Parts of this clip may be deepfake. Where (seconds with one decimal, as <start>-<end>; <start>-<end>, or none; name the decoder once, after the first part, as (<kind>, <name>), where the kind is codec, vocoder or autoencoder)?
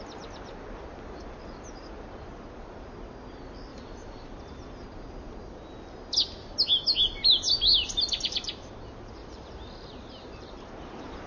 3.7-4.3 (vocoder, BigVGAN v2); 9.2-10.7